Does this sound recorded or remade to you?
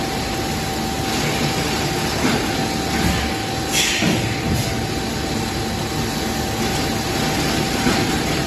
recorded